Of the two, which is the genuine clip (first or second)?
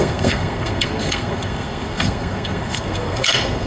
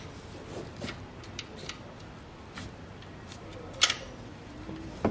second